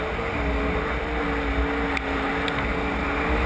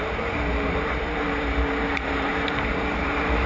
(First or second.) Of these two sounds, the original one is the first